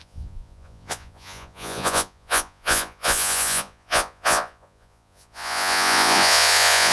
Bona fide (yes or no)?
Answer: no